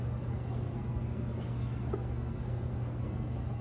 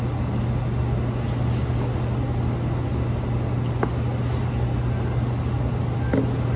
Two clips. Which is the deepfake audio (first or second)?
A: first